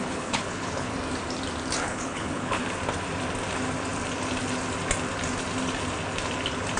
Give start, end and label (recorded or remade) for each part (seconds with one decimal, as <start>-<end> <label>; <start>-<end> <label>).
0.0-0.9 remade; 0.9-1.8 recorded; 1.8-2.6 remade; 2.6-6.8 recorded

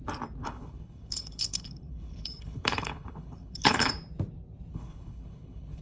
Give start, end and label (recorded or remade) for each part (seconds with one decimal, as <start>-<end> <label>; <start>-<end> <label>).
0.0-0.4 recorded; 0.4-3.9 remade; 3.9-4.7 recorded; 4.7-5.8 remade

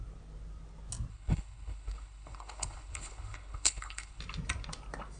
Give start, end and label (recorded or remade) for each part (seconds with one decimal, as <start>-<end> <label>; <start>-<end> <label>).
0.0-1.1 recorded; 1.1-4.2 remade; 4.2-5.2 recorded

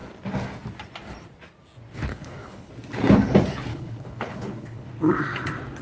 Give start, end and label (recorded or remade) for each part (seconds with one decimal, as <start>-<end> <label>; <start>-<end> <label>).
0.0-2.1 recorded; 2.1-2.7 remade; 2.7-3.7 recorded; 3.7-4.9 remade; 4.9-5.8 recorded

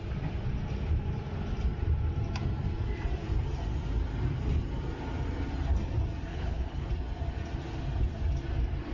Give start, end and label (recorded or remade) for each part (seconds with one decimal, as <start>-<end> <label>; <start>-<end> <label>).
0.0-6.3 recorded; 6.3-6.9 remade; 6.9-8.9 recorded

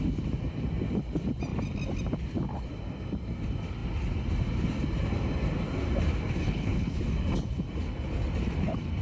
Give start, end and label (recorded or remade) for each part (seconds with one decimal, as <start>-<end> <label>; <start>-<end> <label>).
0.0-6.4 recorded; 6.4-7.0 remade; 7.0-9.0 recorded

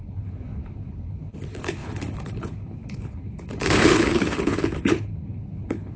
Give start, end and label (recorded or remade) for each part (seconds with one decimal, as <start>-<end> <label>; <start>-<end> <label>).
0.0-6.0 remade

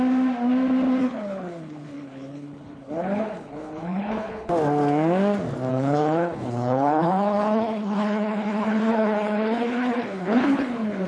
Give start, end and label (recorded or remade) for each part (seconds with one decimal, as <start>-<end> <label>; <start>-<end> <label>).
0.0-1.0 recorded; 1.0-4.5 remade; 4.5-5.7 recorded; 5.7-11.1 remade